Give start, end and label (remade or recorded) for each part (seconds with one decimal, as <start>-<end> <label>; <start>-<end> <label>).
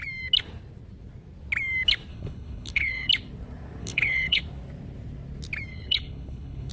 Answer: 0.0-2.1 recorded; 2.1-3.1 remade; 3.1-3.8 recorded; 3.8-4.4 remade; 4.4-5.7 recorded; 5.7-6.7 remade